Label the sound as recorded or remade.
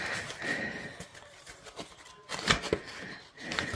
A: recorded